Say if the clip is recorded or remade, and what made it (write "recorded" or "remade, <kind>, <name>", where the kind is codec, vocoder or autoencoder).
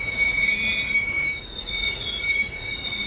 remade, vocoder, Vocos